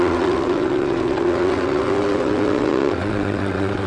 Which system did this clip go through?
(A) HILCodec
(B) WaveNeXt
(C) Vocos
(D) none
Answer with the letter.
B